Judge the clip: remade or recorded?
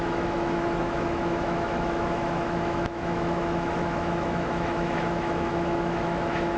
remade